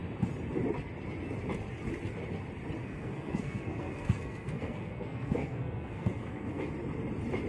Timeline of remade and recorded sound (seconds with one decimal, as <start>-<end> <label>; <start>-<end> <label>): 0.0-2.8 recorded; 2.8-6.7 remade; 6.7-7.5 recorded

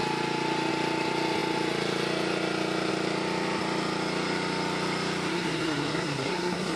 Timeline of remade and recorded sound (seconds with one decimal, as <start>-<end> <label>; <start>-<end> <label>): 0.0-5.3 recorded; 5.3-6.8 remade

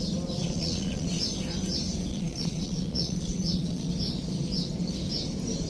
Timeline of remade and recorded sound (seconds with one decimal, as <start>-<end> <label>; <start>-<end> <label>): 0.0-0.4 recorded; 0.4-1.2 remade; 1.2-2.1 recorded; 2.1-3.9 remade; 3.9-5.7 recorded

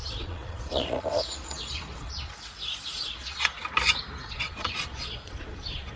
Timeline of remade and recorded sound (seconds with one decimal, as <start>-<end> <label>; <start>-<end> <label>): 0.0-3.6 remade; 3.6-4.2 recorded; 4.2-6.0 remade

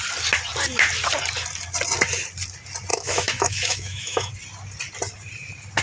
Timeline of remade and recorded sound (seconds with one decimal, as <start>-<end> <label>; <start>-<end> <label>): 0.0-2.9 recorded; 2.9-4.3 remade; 4.3-5.8 recorded

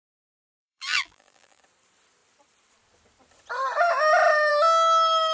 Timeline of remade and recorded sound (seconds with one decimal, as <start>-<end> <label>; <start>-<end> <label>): 0.0-0.4 recorded; 0.4-1.6 remade; 1.6-5.3 recorded

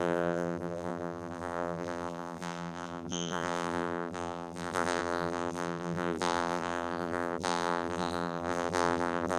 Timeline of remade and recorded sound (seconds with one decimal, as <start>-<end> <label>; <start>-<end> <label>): 0.0-9.4 remade